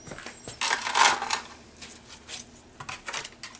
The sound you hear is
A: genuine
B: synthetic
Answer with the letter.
A